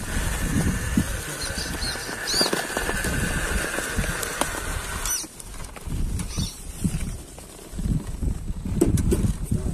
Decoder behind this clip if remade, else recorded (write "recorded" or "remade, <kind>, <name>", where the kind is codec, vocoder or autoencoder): recorded